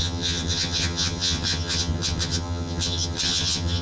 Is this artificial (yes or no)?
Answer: yes